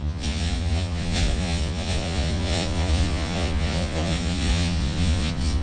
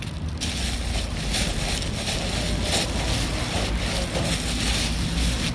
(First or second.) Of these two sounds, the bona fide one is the second